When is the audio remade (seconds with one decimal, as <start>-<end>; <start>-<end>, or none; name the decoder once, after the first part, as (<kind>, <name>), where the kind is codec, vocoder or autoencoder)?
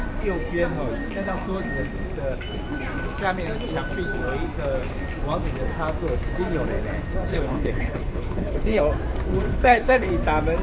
7.3-8.8 (codec, HILCodec); 9.5-10.1